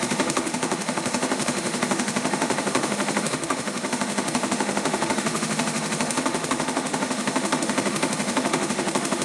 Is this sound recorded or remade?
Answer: remade